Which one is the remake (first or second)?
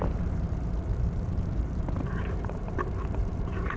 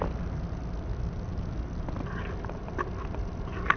first